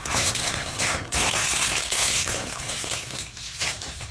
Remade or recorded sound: remade